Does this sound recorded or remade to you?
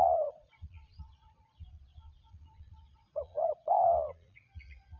remade